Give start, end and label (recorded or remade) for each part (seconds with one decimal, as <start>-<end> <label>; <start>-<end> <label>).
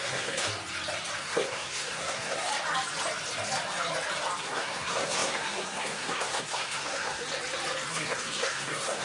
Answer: 0.0-0.5 remade; 0.5-1.2 recorded; 1.2-2.5 remade; 2.5-4.4 recorded; 4.4-7.2 remade; 7.2-7.9 recorded; 7.9-9.0 remade